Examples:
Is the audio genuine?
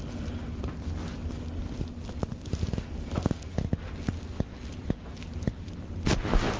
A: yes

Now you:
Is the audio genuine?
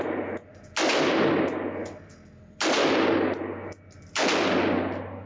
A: yes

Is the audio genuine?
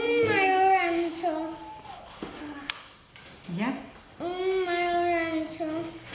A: yes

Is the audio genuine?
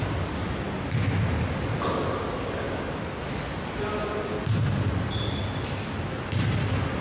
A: yes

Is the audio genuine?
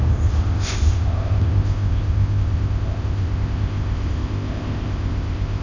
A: no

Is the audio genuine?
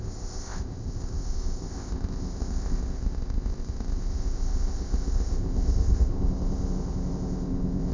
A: no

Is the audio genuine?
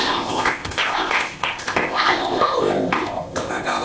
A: no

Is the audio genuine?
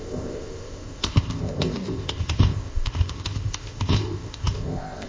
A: no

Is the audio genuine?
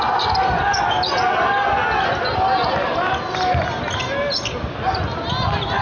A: yes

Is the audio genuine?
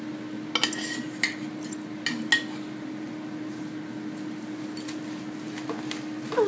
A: yes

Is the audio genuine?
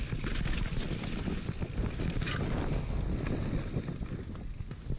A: yes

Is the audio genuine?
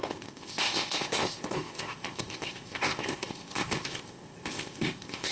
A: no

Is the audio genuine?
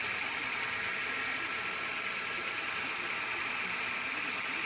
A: yes